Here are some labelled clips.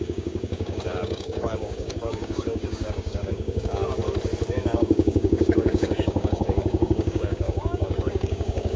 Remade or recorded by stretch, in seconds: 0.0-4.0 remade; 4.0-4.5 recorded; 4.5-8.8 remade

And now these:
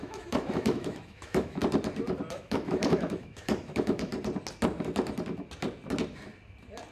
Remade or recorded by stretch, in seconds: 0.0-1.6 remade; 1.6-2.3 recorded; 2.3-4.1 remade; 4.1-6.9 recorded

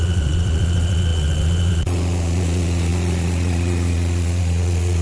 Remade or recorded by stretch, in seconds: 0.0-5.0 remade

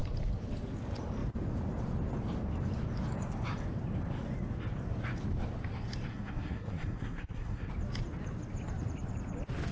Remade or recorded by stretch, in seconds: 0.0-6.1 recorded; 6.1-7.7 remade; 7.7-9.7 recorded